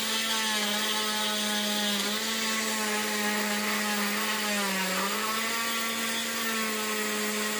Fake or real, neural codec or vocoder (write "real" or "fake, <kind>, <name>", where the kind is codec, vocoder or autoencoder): real